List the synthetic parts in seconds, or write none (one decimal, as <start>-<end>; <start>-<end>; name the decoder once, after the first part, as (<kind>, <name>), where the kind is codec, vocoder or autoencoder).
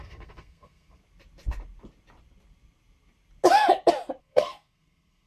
0.0-1.0 (codec, SNAC); 4.2-5.3